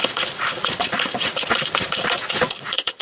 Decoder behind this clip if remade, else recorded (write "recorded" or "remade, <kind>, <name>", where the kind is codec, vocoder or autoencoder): remade, vocoder, Vocos